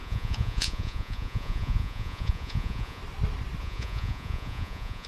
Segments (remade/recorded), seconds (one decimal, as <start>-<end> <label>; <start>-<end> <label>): 0.0-3.0 remade; 3.0-3.6 recorded; 3.6-5.1 remade